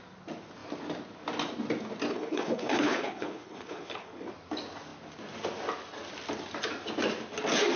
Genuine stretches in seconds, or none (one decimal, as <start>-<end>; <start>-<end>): 0.0-2.1; 4.3-7.8